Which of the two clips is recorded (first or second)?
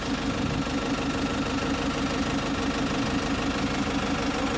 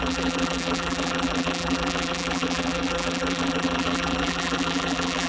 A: first